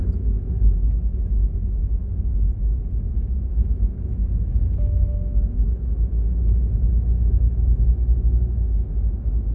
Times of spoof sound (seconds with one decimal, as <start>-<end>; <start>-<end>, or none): 0.0-2.0; 3.1-9.5